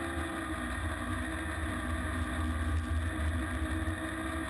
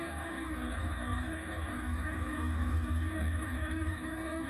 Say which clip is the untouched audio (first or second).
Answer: first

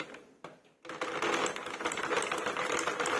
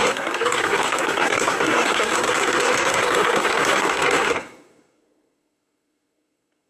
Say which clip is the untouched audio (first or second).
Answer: first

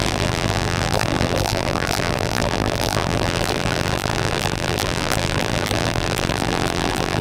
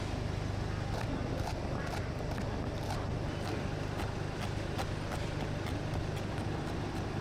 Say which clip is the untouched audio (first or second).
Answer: second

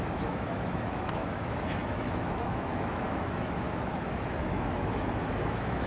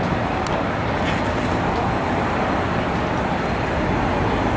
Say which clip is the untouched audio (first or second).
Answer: second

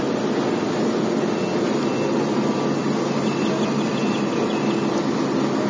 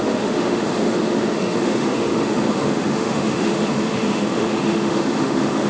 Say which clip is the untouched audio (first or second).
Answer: first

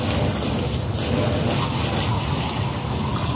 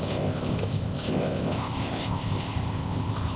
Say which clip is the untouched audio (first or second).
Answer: first